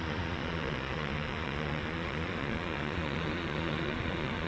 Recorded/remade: remade